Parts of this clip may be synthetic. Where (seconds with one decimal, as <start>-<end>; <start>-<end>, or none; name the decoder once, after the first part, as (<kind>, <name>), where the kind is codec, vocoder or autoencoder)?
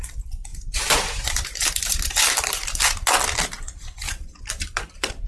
0.5-2.8 (vocoder, BigVGAN v2); 4.2-5.3